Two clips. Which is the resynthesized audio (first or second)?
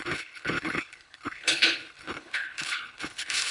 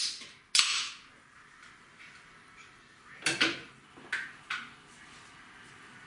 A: first